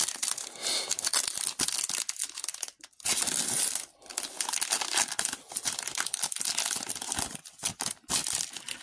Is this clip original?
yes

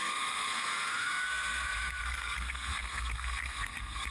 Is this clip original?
no